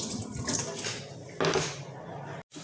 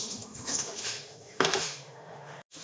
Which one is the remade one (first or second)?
second